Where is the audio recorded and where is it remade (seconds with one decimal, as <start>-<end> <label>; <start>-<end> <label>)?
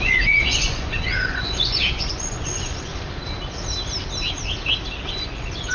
0.0-2.9 remade; 2.9-5.1 recorded; 5.1-5.7 remade